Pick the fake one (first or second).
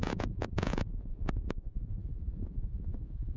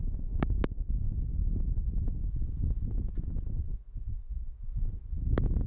first